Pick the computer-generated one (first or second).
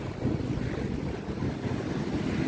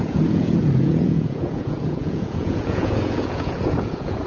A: second